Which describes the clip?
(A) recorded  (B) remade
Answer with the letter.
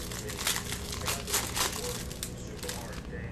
A